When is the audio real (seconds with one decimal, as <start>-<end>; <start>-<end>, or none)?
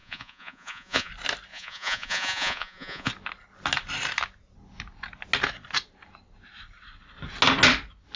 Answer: 1.1-1.5; 3.1-8.2